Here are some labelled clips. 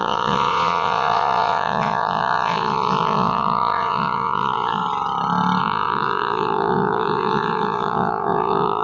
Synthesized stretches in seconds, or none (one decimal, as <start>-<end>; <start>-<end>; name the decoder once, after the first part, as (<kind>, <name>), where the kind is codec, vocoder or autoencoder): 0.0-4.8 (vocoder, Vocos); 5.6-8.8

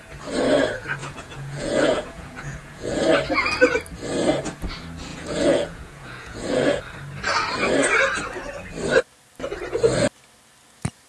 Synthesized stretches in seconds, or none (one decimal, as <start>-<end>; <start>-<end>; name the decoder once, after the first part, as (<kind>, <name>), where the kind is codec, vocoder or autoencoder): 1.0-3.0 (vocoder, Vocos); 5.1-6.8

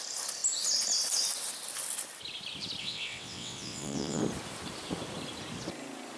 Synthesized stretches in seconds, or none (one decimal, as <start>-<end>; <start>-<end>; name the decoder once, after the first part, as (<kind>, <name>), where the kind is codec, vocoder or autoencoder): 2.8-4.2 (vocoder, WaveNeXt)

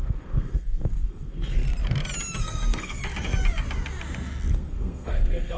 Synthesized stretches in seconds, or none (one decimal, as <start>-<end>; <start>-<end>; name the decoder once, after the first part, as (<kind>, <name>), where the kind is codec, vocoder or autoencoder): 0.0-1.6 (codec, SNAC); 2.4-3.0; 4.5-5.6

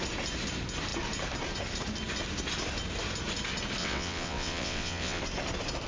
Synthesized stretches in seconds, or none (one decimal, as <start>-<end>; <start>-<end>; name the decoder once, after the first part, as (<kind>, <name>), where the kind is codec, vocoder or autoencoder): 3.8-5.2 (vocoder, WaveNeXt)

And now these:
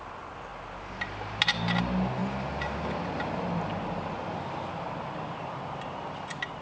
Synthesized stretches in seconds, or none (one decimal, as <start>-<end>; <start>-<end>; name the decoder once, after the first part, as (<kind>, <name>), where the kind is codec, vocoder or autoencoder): none

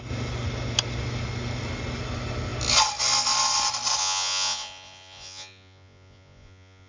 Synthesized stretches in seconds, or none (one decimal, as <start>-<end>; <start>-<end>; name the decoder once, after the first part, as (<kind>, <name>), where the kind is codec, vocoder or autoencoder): 4.0-6.9 (vocoder, Vocos)

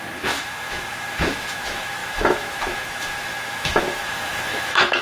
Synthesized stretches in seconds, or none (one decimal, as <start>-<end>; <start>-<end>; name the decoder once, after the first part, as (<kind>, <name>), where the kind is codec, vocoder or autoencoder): 0.0-5.0 (autoencoder, DAC-VAE)